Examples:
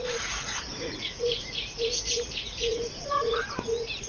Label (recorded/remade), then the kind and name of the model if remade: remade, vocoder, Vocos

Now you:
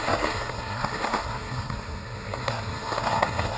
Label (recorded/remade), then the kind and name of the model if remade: remade, codec, SNAC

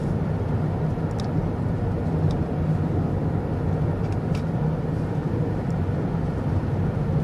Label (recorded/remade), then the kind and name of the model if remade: recorded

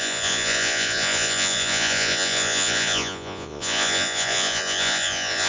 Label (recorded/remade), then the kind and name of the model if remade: remade, vocoder, Vocos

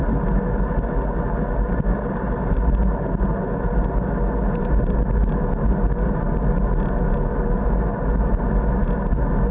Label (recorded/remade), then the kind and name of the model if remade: recorded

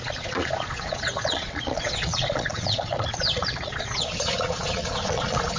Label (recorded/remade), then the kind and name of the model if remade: remade, vocoder, Vocos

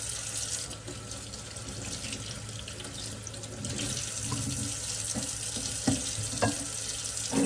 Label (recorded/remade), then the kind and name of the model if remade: recorded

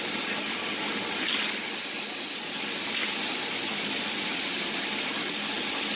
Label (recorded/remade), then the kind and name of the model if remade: recorded